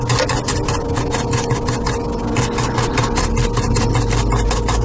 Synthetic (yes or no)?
no